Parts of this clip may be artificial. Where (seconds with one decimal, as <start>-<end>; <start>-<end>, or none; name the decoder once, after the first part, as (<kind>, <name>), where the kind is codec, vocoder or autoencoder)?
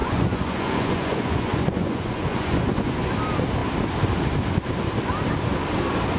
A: 0.0-3.1 (vocoder, Vocos)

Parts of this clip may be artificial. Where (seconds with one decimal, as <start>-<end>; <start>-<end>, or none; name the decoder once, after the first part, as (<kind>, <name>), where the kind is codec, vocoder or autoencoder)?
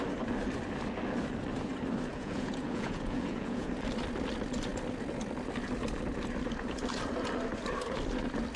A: 2.1-3.7 (vocoder, Vocos)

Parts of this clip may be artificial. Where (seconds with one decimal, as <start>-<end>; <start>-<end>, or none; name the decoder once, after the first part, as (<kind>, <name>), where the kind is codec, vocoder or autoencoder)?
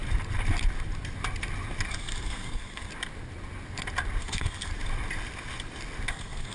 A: 1.9-2.9 (codec, SNAC); 4.2-4.7; 6.1-6.5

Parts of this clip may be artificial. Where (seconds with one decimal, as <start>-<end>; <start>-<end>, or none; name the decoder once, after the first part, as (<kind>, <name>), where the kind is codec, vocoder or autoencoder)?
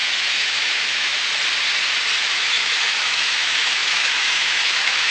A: 0.0-1.1 (autoencoder, DAC-VAE); 2.2-5.1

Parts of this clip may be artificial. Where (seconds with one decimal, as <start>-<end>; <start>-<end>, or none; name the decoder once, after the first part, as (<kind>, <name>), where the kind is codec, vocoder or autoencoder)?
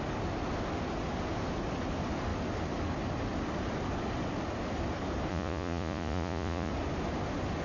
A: 5.3-6.7 (vocoder, Vocos)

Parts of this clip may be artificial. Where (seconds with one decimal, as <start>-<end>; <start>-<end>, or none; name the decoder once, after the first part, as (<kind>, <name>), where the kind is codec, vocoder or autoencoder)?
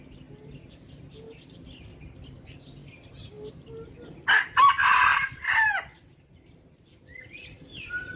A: none